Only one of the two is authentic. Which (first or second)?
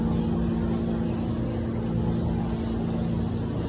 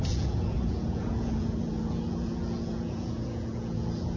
first